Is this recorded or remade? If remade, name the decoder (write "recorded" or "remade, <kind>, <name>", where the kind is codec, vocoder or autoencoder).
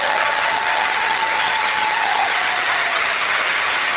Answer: remade, vocoder, HiFi-GAN